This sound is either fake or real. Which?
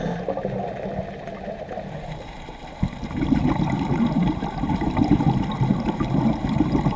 real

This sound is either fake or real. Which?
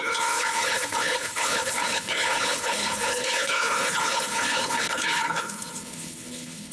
fake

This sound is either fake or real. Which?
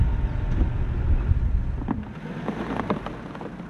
real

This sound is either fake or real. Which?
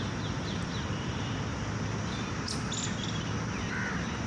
real